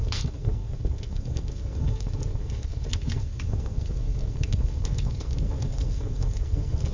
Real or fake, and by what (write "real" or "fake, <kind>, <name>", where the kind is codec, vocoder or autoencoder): fake, codec, SNAC